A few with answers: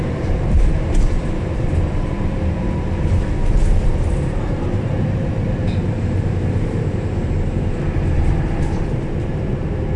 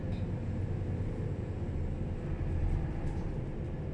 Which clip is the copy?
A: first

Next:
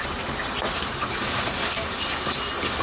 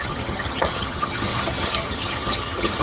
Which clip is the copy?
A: second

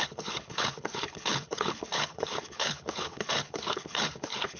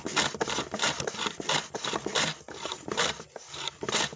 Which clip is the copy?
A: first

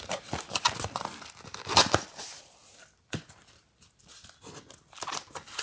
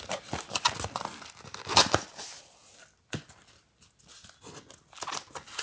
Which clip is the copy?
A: first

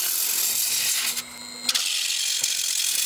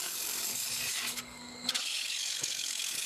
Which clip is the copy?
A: second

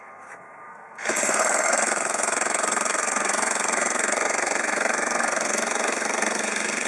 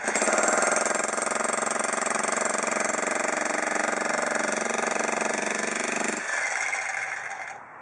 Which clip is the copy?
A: first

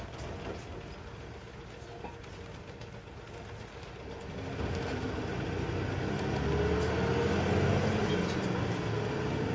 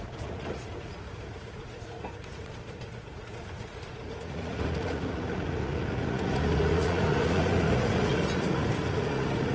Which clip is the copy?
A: second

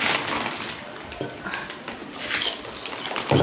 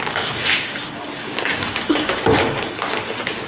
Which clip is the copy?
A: second